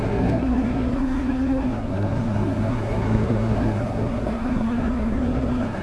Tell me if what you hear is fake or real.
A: fake